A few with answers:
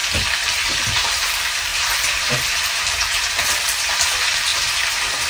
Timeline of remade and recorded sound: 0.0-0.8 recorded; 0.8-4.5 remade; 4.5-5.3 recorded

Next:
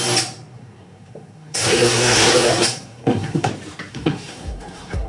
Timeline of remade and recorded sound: 0.0-0.5 recorded; 0.5-3.5 remade; 3.5-3.9 recorded; 3.9-5.1 remade